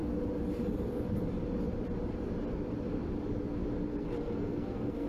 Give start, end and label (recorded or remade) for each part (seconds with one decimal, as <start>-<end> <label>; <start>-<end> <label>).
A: 0.0-3.9 recorded; 3.9-5.1 remade